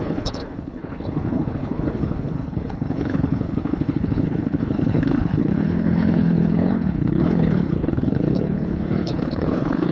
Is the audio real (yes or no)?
no